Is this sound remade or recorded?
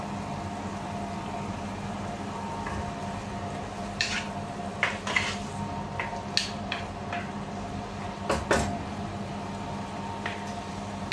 recorded